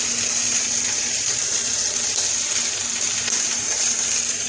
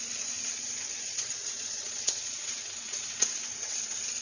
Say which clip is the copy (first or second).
second